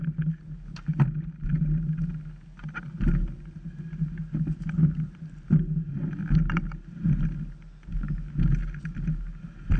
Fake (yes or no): no